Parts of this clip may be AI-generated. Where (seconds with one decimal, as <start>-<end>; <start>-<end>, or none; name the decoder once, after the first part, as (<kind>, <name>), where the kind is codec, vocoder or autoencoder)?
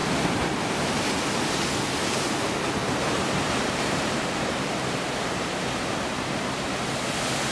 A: 0.0-1.0 (vocoder, BigVGAN v2); 2.8-7.1